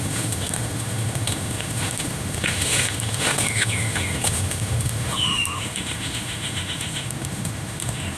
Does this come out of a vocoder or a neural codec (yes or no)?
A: yes